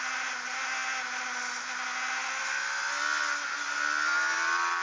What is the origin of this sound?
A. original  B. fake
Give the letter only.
A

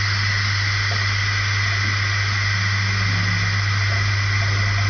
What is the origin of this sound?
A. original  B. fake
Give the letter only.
A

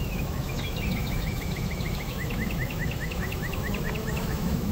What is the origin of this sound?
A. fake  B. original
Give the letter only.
A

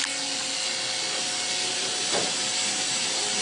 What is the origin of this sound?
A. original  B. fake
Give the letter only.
A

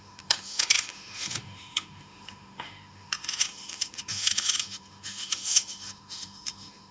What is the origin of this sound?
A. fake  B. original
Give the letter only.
A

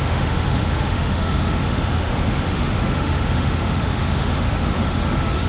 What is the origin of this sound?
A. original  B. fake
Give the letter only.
B